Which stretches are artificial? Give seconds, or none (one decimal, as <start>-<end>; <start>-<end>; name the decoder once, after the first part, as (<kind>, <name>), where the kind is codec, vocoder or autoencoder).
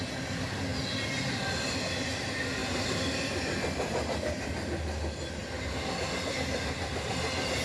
2.6-4.5 (vocoder, BigVGAN v2)